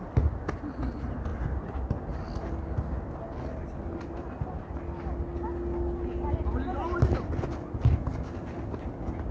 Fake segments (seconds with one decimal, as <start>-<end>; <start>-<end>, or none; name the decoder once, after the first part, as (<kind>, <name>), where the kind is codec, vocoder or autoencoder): none